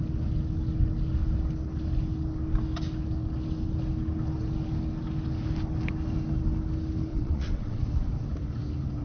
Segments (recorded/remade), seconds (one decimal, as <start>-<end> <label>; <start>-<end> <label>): 0.0-7.1 recorded; 7.1-7.8 remade; 7.8-9.0 recorded